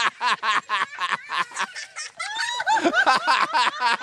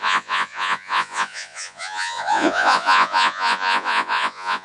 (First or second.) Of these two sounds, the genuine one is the first